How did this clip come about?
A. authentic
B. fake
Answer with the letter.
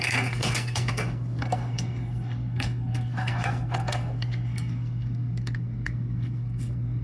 B